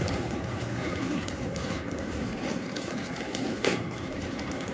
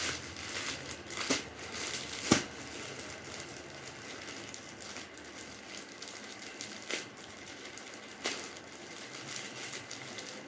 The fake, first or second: first